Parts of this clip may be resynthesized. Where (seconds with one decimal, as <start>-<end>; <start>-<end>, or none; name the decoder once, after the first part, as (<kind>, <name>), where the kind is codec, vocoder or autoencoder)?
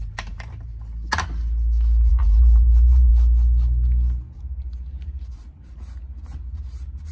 0.0-0.7 (vocoder, BigVGAN v2); 2.1-3.1; 4.4-7.1